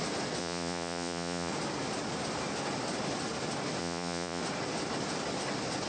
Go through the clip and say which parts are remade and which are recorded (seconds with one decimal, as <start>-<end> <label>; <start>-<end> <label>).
0.0-0.4 recorded; 0.4-1.5 remade; 1.5-3.8 recorded; 3.8-4.4 remade; 4.4-5.9 recorded